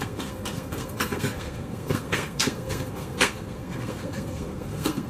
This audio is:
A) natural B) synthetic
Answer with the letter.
B